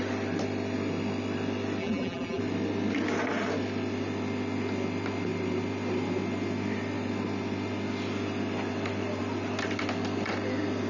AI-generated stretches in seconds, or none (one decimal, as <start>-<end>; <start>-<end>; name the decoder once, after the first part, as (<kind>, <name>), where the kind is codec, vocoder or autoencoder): 1.8-2.4 (vocoder, BigVGAN v2)